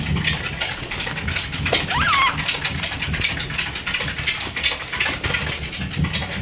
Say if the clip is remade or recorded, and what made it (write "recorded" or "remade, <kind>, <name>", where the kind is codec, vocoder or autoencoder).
recorded